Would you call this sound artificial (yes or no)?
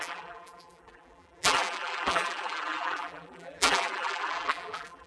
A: yes